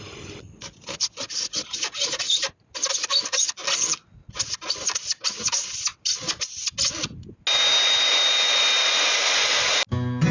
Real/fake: real